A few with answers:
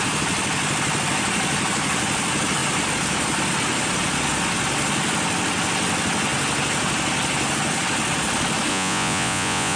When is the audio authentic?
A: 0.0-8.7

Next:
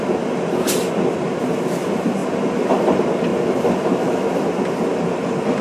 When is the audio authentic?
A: 0.0-5.6

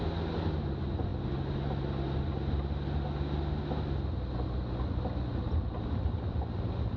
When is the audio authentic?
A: 0.0-7.0

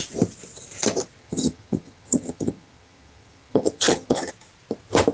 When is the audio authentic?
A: 0.0-1.2; 4.3-5.1

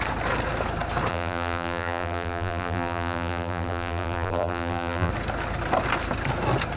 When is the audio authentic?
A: 0.0-1.1; 5.1-6.8

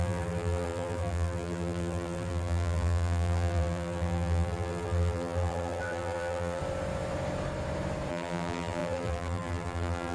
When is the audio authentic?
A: 6.6-8.1

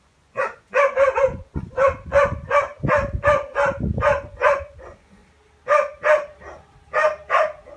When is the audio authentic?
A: 2.7-4.0; 5.2-7.8